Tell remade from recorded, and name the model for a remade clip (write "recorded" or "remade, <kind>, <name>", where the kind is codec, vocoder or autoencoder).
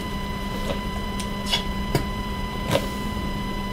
remade, vocoder, BigVGAN v2